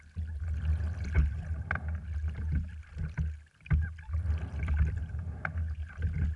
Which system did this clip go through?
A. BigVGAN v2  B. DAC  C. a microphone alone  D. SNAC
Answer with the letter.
C